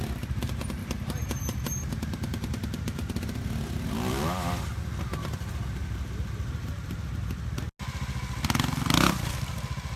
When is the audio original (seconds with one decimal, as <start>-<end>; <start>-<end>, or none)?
0.0-10.0